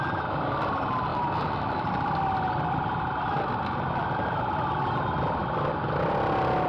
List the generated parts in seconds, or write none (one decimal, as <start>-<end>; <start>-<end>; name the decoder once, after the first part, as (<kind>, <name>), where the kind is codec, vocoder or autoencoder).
none